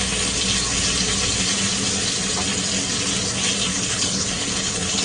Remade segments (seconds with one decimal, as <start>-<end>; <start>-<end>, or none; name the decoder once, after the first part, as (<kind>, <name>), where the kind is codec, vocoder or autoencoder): 3.7-5.0 (codec, HILCodec)